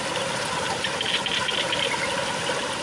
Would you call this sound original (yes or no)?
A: yes